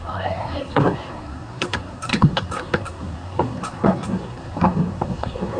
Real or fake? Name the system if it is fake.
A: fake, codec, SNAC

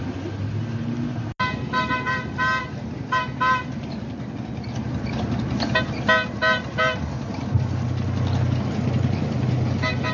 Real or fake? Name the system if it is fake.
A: real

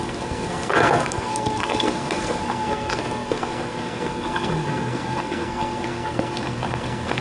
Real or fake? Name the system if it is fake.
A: fake, codec, SNAC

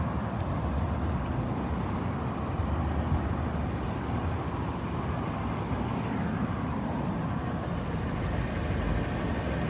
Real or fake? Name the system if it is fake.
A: real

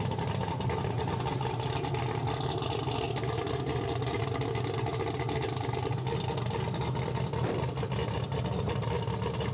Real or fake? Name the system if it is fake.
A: real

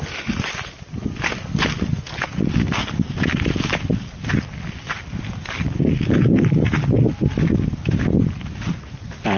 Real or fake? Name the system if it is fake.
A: real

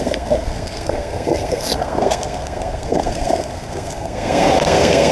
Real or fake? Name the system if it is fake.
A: fake, codec, SNAC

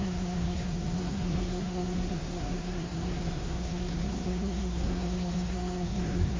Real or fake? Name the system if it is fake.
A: fake, codec, SNAC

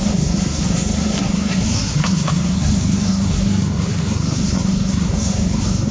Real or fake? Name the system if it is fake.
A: fake, codec, SNAC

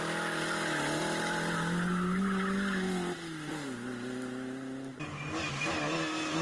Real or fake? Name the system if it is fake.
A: real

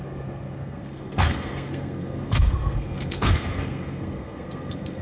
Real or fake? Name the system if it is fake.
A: fake, codec, SNAC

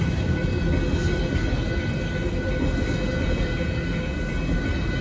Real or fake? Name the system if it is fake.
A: real